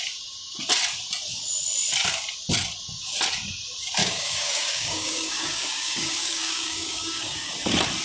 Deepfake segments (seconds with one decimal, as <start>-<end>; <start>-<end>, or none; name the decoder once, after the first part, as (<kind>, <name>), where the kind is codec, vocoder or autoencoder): 4.0-7.5 (codec, DAC)